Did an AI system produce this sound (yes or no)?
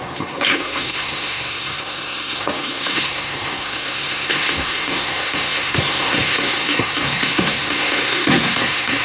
yes